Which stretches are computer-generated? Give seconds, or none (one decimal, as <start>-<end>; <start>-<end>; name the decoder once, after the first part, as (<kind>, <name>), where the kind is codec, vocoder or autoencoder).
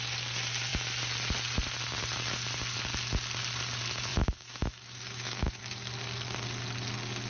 4.1-5.6 (autoencoder, DAC-VAE)